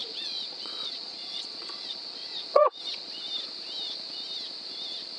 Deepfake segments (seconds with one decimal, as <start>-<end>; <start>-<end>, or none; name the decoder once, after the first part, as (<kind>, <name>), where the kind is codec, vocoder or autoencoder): 0.0-3.1 (vocoder, Vocos)